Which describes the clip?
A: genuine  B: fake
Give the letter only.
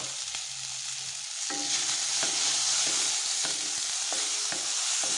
A